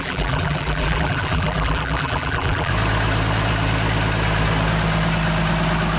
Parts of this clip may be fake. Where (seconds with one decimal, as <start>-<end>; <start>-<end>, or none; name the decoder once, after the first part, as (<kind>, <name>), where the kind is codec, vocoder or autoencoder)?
0.0-2.7 (vocoder, BigVGAN v2)